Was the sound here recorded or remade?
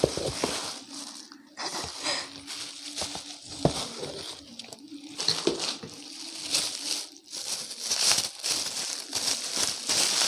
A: recorded